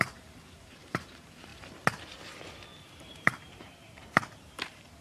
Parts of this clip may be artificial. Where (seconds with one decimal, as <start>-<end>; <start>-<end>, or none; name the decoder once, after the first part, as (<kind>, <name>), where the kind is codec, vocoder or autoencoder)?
0.0-1.5 (vocoder, BigVGAN v2); 2.8-5.0